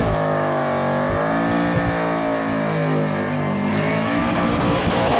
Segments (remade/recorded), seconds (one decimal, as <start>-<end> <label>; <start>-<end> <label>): 0.0-0.6 remade; 0.6-3.7 recorded; 3.7-4.2 remade; 4.2-4.8 recorded; 4.8-5.2 remade